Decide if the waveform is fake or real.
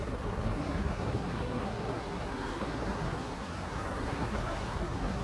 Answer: fake